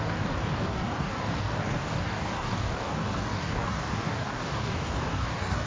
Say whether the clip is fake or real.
fake